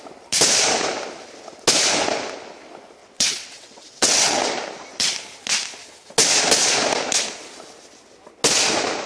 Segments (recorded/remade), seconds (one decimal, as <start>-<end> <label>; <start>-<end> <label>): 0.0-3.0 recorded; 3.0-4.4 remade; 4.4-9.1 recorded